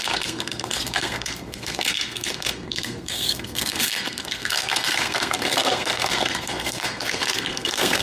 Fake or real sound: fake